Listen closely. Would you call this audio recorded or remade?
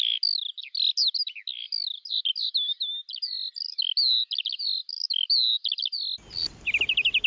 recorded